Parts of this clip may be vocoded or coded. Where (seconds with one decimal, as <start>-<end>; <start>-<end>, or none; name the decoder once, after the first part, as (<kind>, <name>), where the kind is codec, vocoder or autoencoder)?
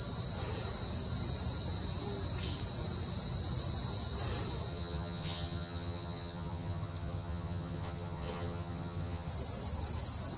4.7-9.3 (vocoder, HiFi-GAN)